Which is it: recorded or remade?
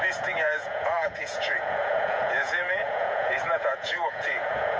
remade